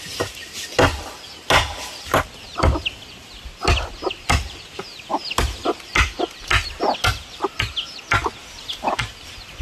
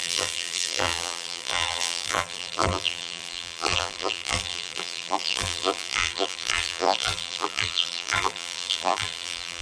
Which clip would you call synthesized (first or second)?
second